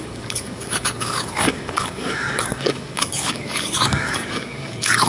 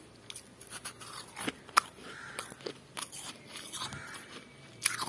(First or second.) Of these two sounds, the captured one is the second